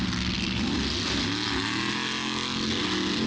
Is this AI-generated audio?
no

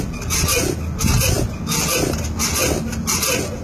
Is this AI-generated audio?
no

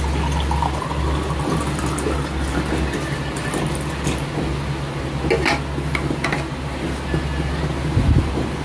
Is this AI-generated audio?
no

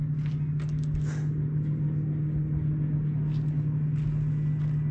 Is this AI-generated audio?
no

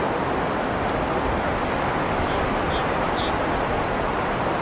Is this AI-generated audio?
no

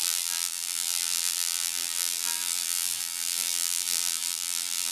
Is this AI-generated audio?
yes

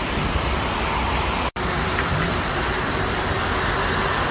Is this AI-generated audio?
yes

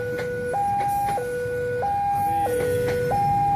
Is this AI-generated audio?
no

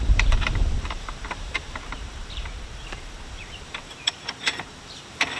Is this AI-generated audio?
yes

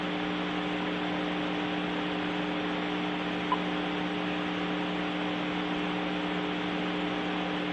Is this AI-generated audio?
no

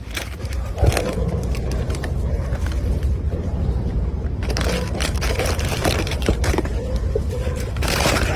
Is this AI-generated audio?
yes